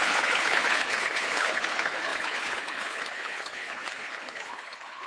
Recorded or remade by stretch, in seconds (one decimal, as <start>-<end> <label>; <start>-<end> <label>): 0.0-5.1 remade